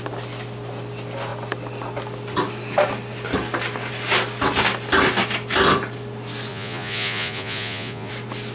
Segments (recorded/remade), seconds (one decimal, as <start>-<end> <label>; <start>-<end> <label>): 0.0-6.5 recorded; 6.5-8.1 remade; 8.1-8.5 recorded